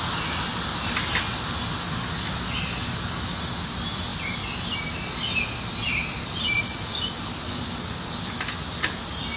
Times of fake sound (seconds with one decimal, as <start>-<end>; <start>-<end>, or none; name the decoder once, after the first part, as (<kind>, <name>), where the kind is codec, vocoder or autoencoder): 6.0-7.1 (vocoder, BigVGAN v2)

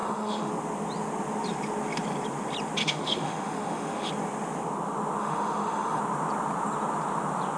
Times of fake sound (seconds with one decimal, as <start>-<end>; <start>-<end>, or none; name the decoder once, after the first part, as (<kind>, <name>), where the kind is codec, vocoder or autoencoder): 0.0-0.5 (autoencoder, DAC-VAE); 2.8-4.1; 5.2-6.0

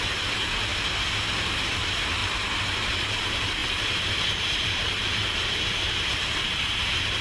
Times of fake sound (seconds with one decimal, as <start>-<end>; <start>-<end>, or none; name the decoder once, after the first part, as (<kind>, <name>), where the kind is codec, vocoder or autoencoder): 0.0-0.7 (vocoder, BigVGAN v2); 1.3-3.6; 4.4-7.2